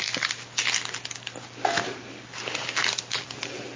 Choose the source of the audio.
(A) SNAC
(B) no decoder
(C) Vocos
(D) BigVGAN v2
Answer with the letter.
B